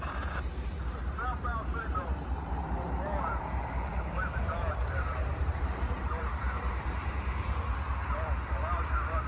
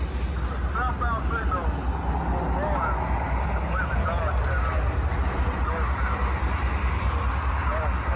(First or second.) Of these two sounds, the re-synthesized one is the first